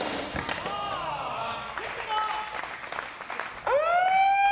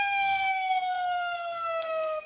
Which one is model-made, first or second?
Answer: second